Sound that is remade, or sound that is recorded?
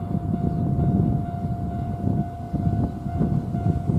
recorded